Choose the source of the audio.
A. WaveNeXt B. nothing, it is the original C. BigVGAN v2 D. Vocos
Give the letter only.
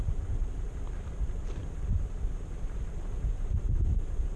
C